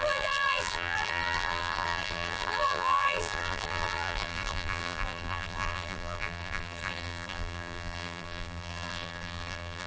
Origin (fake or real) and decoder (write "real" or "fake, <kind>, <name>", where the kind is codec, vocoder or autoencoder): fake, vocoder, BigVGAN v2